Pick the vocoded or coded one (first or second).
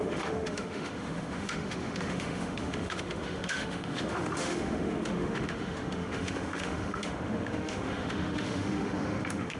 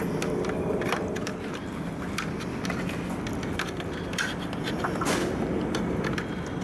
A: first